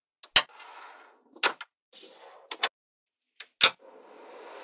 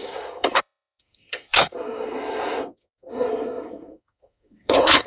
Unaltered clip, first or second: first